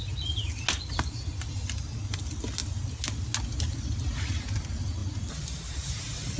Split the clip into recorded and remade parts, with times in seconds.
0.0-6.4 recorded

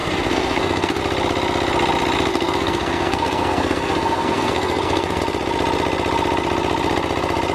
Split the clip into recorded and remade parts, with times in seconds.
0.0-1.0 remade; 1.0-2.3 recorded; 2.3-5.2 remade; 5.2-7.5 recorded